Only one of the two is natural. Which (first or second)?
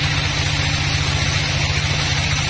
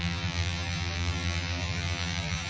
first